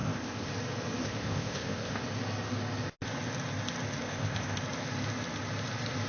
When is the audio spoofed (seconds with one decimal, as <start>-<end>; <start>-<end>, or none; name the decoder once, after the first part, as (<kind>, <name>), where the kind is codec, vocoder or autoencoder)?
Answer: 0.0-0.5 (codec, ZipCodec); 1.0-2.0; 4.0-4.6